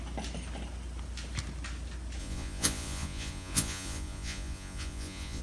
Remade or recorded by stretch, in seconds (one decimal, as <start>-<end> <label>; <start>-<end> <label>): 0.0-2.2 recorded; 2.2-5.4 remade